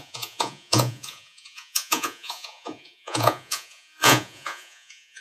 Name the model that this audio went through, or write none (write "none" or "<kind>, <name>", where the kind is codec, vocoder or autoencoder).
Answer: vocoder, Vocos